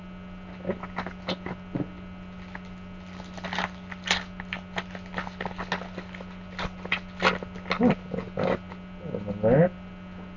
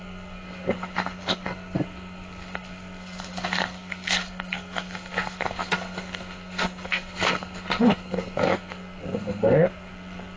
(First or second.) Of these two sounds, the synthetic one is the second